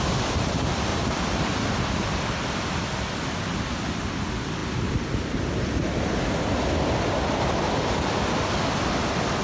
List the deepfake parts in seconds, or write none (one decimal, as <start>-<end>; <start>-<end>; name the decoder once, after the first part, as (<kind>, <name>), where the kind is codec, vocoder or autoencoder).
0.9-1.6 (vocoder, BigVGAN v2)